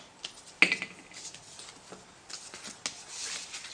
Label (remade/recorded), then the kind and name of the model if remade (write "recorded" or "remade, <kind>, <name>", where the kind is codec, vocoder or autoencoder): recorded